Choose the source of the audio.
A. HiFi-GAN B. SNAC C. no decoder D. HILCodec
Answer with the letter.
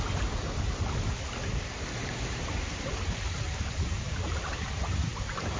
C